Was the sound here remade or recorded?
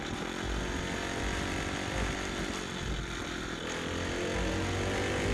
recorded